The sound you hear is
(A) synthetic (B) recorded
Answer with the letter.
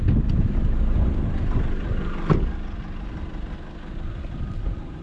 B